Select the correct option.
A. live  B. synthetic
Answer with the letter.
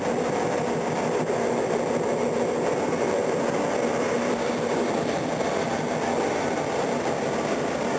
A